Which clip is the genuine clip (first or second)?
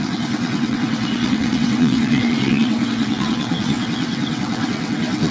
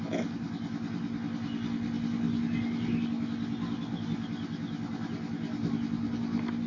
second